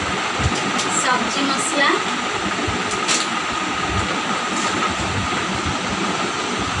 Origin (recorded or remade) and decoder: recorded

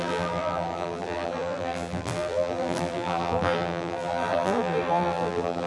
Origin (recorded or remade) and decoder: remade, vocoder, BigVGAN v2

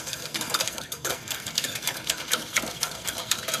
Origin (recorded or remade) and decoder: remade, codec, SNAC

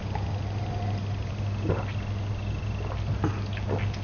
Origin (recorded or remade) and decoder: recorded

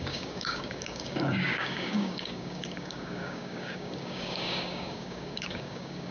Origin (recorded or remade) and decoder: remade, codec, DAC